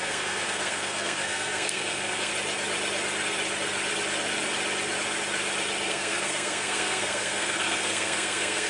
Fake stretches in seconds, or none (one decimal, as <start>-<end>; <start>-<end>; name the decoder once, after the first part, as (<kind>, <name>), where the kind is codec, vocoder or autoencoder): 0.0-2.3 (codec, SNAC); 5.9-8.7